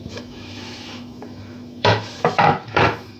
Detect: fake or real fake